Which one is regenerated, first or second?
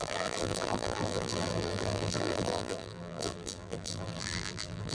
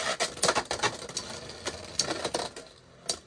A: first